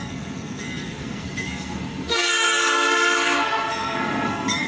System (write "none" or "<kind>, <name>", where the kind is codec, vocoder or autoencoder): codec, SNAC